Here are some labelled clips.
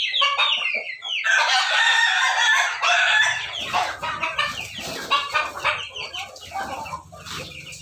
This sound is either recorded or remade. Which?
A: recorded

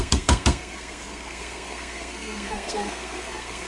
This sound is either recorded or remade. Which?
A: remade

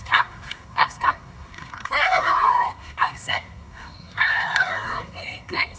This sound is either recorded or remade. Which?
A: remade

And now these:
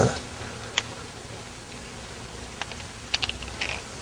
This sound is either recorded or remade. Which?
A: recorded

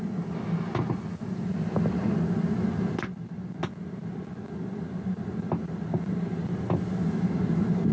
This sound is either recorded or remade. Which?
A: recorded